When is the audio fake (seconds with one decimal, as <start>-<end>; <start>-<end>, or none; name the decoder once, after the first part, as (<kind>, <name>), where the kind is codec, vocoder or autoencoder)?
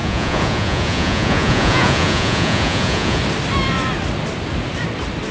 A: 0.0-3.2 (vocoder, Vocos)